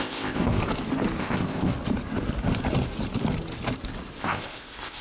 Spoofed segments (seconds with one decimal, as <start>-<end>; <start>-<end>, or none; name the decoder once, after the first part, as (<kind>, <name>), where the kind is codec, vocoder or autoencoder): 0.0-0.6 (codec, ZipCodec); 1.2-1.7; 4.2-5.0